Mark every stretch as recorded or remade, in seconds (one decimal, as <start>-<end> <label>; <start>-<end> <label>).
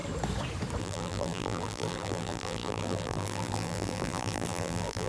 0.0-0.8 recorded; 0.8-5.1 remade